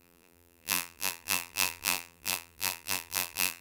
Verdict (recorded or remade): remade